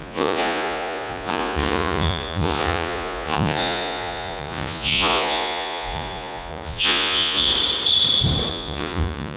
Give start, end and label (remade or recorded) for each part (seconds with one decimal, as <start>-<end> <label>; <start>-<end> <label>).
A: 0.0-7.5 remade; 7.5-8.5 recorded; 8.5-9.4 remade